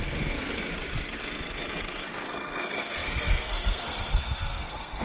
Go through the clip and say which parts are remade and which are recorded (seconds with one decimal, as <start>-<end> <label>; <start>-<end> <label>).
0.0-0.6 remade; 0.6-2.1 recorded; 2.1-5.0 remade